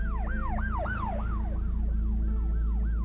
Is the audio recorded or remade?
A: recorded